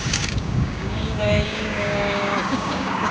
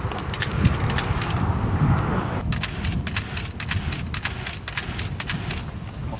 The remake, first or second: first